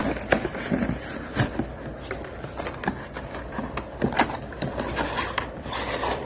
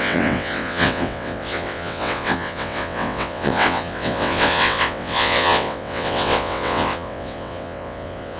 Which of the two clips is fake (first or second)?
second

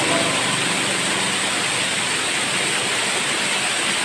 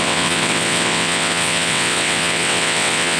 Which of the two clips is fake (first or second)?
second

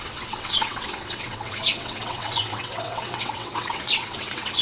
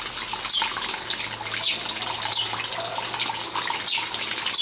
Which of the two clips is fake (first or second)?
first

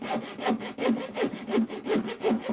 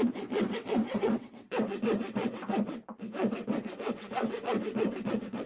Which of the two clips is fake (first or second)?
second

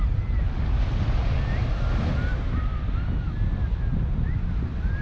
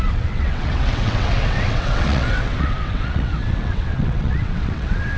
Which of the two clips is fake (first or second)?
second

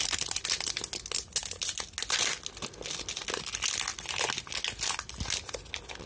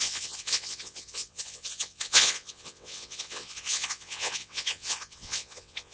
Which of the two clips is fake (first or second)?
second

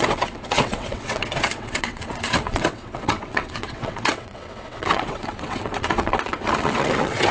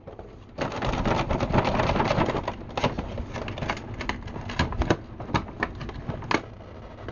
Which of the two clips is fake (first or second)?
first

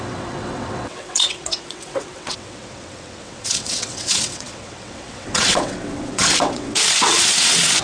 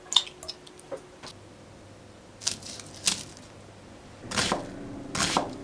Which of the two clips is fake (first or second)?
first